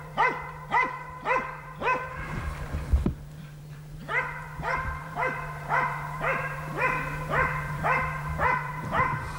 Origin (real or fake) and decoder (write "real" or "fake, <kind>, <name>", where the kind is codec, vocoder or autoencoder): fake, vocoder, BigVGAN v2